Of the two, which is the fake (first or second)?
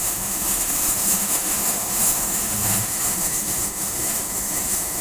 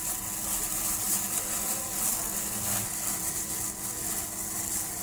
first